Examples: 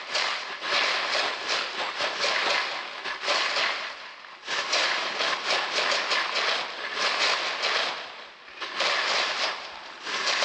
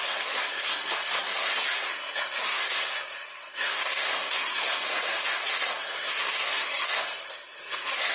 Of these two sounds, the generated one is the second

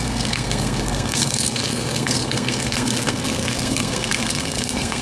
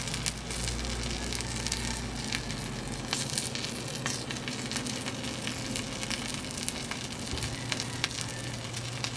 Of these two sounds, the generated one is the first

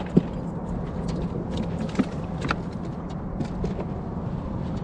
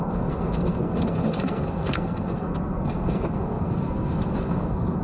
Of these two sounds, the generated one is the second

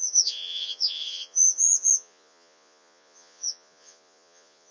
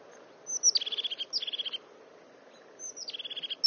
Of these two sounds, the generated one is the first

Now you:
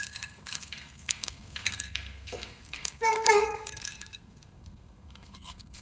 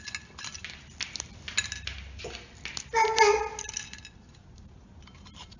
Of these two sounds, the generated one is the first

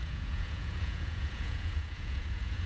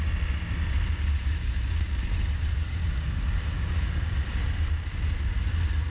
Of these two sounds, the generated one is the first